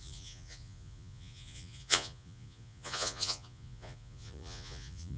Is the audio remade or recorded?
remade